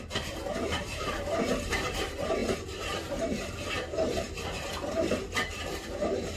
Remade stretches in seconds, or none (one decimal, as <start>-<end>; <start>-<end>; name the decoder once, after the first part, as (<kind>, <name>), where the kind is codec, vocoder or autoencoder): 0.0-6.4 (vocoder, BigVGAN v2)